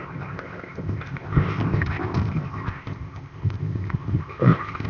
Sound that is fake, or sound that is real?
fake